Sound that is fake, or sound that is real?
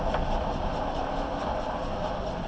real